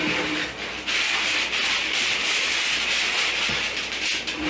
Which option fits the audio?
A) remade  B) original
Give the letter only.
B